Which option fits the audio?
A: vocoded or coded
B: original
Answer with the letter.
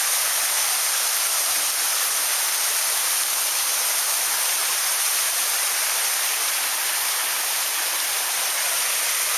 B